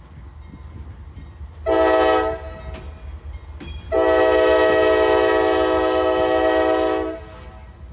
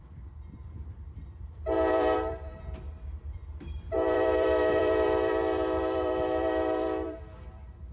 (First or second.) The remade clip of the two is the second